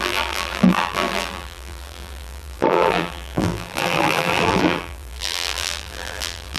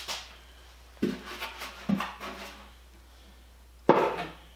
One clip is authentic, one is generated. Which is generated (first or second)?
first